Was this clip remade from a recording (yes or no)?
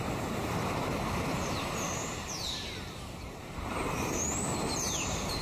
yes